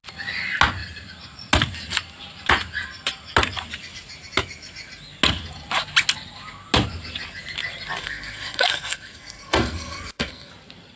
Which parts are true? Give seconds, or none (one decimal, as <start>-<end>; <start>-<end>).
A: 0.0-8.0; 10.5-11.0